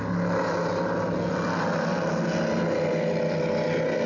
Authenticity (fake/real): real